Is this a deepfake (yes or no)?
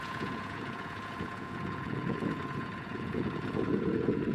yes